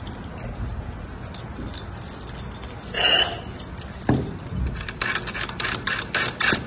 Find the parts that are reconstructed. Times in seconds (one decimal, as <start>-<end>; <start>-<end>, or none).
none